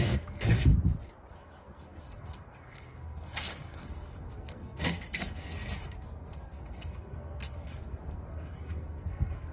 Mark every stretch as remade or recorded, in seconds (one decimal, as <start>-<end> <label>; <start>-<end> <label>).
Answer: 0.0-0.7 remade; 0.7-1.3 recorded; 1.3-9.5 remade